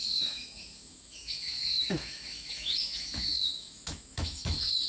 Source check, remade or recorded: remade